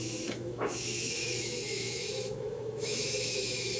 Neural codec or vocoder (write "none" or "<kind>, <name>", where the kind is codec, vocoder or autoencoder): autoencoder, DAC-VAE